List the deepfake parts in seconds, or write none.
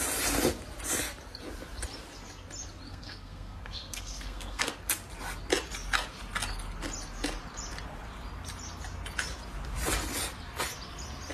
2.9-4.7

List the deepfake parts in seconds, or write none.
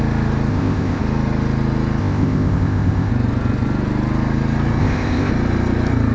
0.5-1.0; 2.0-3.1; 4.8-5.3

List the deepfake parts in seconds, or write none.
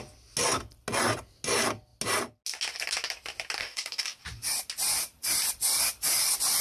3.6-4.2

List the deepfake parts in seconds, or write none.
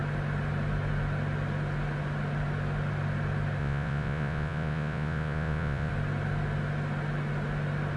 3.6-5.9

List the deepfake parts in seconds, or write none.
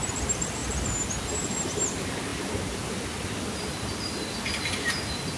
none